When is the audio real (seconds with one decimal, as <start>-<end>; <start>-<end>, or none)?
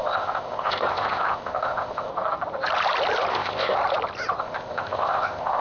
2.1-3.3; 3.8-4.4